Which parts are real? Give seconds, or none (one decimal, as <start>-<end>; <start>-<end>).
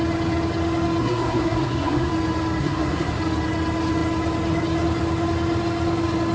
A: 0.0-1.0; 2.1-2.6; 3.2-6.3